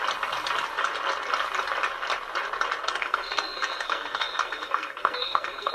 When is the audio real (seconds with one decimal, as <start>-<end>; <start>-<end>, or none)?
0.0-2.8